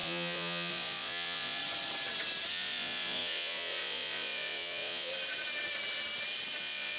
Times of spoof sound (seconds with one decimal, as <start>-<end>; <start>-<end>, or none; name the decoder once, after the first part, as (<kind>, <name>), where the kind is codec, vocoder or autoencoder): 0.0-1.6 (vocoder, Vocos); 2.5-5.1; 6.6-7.0